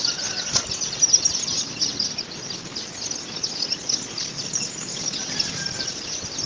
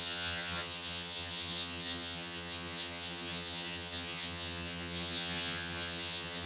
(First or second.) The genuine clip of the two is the first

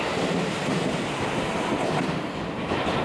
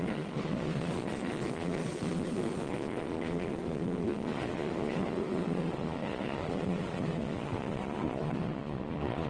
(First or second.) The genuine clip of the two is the first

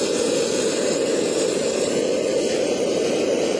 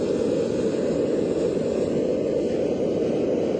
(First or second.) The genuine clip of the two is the second